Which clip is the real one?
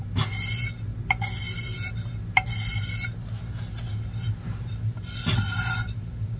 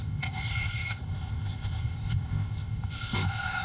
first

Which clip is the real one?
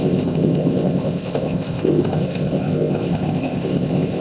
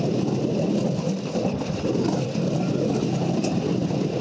second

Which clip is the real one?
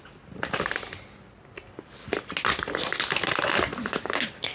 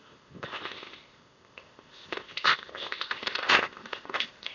first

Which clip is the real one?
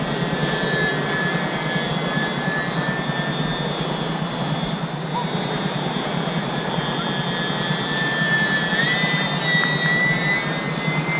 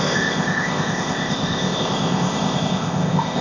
first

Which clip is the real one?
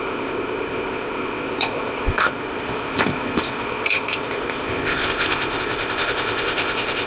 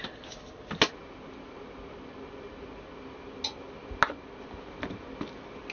second